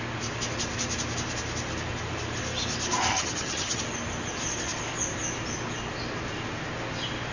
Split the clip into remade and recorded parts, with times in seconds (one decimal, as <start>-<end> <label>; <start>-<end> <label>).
0.0-3.1 recorded; 3.1-3.8 remade; 3.8-7.3 recorded

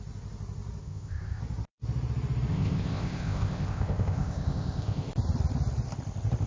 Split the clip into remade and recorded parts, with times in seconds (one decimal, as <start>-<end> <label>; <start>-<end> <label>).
0.0-0.8 recorded; 0.8-1.4 remade; 1.4-2.5 recorded; 2.5-5.1 remade; 5.1-6.5 recorded

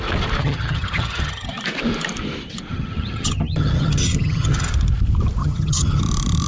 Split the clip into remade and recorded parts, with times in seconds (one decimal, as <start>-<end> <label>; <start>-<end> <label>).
0.0-0.4 recorded; 0.4-1.5 remade; 1.5-2.7 recorded; 2.7-4.7 remade; 4.7-5.4 recorded; 5.4-6.0 remade; 6.0-6.5 recorded

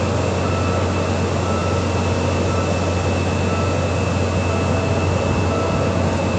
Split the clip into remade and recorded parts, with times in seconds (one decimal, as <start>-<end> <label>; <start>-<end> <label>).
0.0-6.4 recorded

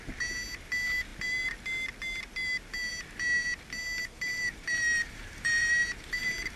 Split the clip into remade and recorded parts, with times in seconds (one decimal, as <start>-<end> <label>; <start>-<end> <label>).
0.0-4.0 recorded; 4.0-6.6 remade